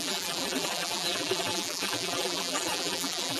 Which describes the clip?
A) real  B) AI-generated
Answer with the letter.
B